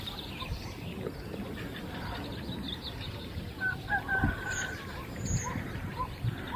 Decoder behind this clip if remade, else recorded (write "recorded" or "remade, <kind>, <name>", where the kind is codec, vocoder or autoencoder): recorded